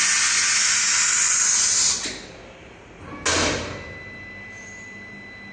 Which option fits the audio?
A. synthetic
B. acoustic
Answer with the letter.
B